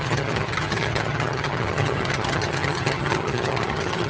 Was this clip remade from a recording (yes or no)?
yes